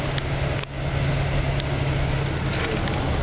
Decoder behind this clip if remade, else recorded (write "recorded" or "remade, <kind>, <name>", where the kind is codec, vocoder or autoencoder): recorded